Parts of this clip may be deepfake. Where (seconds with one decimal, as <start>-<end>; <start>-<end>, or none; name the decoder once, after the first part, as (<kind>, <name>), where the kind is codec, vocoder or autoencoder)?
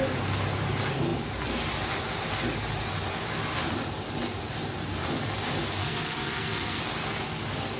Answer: 5.8-6.8 (codec, SNAC)